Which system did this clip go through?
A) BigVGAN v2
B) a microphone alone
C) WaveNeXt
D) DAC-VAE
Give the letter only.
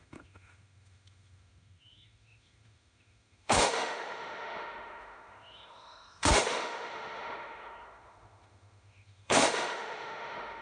D